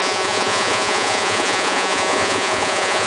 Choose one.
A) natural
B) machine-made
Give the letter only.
B